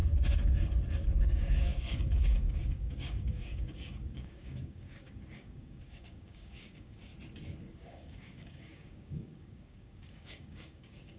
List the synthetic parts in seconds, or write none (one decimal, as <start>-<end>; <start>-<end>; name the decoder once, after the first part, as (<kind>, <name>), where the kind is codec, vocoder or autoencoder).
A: 1.2-7.1 (codec, DAC); 7.6-11.2